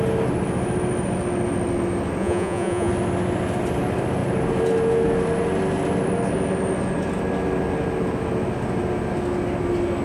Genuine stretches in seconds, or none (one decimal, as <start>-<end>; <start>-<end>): 0.0-2.2; 2.9-10.0